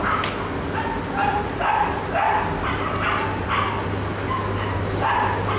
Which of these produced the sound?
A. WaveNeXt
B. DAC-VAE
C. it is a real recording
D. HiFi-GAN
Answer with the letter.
C